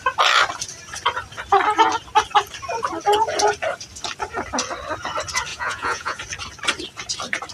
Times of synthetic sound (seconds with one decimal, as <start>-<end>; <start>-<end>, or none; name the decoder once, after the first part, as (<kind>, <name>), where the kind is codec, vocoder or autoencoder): 5.5-6.2 (vocoder, Vocos)